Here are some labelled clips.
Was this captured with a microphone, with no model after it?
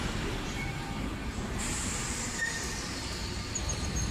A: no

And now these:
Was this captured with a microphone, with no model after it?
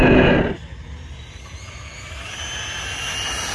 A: yes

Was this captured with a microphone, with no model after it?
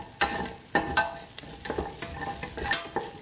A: yes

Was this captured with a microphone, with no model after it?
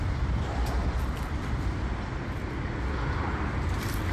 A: no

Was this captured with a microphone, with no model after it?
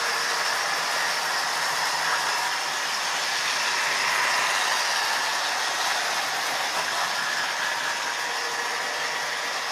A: yes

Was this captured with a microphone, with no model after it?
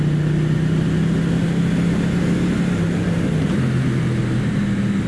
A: yes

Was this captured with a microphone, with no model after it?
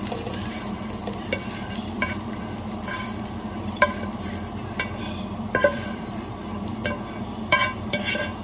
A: no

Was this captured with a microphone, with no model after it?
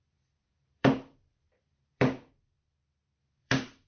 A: no